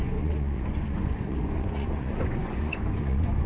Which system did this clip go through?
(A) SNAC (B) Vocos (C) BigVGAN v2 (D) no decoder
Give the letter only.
B